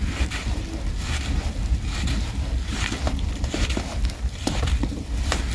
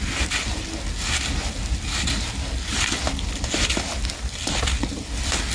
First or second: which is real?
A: second